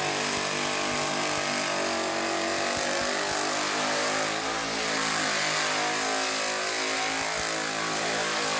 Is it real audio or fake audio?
real